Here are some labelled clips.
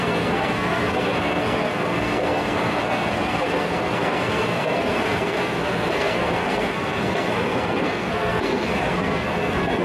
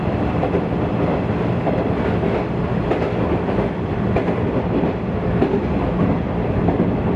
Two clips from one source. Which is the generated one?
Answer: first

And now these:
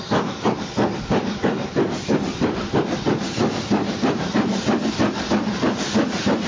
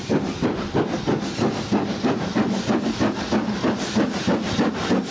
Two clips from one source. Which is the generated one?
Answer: first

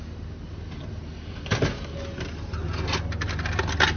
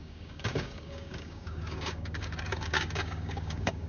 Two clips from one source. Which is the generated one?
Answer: second